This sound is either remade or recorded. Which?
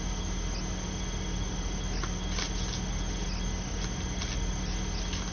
recorded